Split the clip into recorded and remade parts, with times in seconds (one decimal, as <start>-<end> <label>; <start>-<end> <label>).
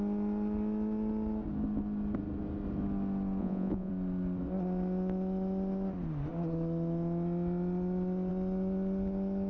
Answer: 0.0-3.4 recorded; 3.4-3.9 remade; 3.9-9.5 recorded